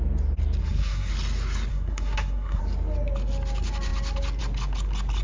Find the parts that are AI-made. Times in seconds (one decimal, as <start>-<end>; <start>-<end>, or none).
0.6-1.1; 1.7-2.6